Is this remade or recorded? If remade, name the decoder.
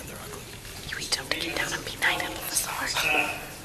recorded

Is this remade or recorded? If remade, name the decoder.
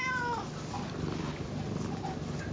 recorded